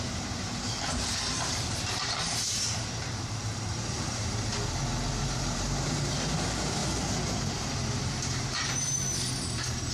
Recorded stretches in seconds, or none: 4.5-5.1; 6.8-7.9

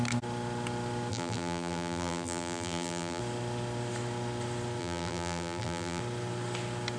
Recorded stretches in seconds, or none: 0.0-1.1; 3.2-4.8; 6.0-7.0